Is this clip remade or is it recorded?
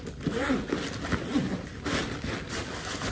recorded